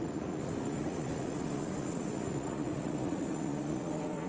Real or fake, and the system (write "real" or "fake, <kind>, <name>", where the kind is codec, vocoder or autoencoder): fake, vocoder, Vocos